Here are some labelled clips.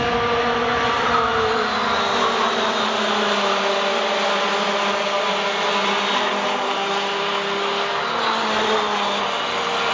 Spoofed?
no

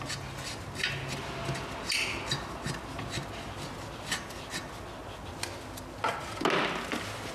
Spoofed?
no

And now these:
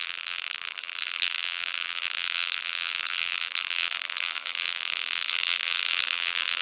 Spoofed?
yes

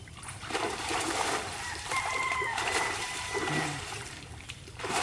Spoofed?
yes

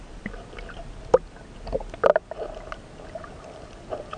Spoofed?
no